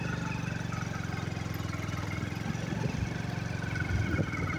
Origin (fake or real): real